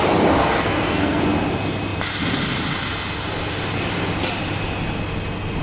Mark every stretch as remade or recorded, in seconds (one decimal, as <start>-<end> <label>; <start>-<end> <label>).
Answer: 0.0-0.4 recorded; 0.4-1.2 remade; 1.2-5.6 recorded